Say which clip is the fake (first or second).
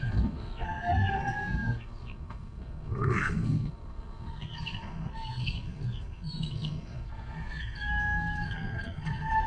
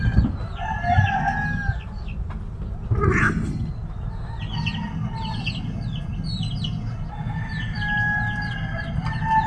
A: first